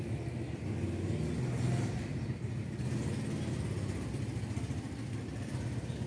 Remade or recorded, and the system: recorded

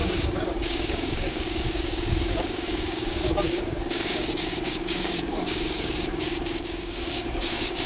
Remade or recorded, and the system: remade, codec, DAC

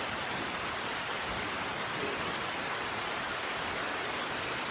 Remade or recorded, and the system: recorded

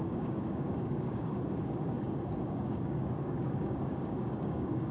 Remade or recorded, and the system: remade, codec, DAC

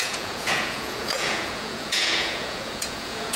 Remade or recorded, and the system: remade, vocoder, Vocos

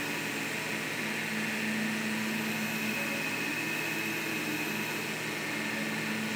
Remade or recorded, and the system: recorded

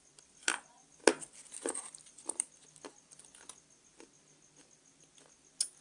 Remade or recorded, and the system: recorded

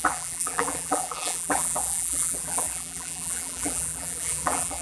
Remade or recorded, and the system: remade, vocoder, BigVGAN v2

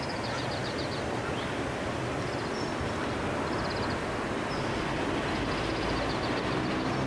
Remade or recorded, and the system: recorded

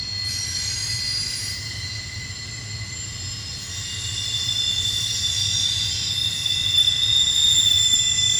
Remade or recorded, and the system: recorded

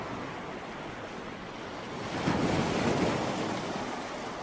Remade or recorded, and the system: recorded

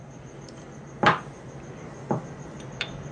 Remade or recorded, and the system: recorded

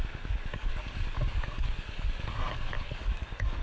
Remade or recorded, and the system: remade, codec, DAC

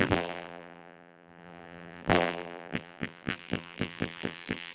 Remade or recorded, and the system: remade, vocoder, BigVGAN v2